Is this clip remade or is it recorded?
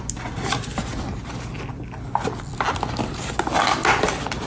recorded